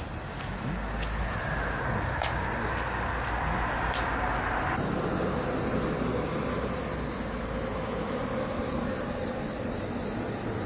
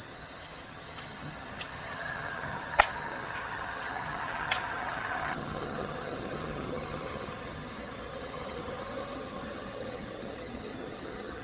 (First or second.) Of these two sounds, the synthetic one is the second